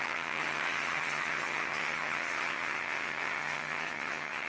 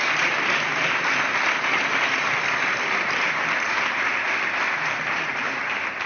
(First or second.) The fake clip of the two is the first